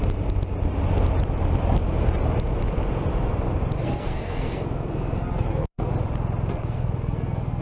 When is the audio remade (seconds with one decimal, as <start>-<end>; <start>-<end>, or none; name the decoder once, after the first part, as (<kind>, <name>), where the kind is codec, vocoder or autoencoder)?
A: 3.8-5.9 (codec, SNAC); 6.5-7.6